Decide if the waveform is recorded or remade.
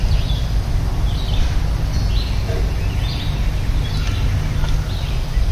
recorded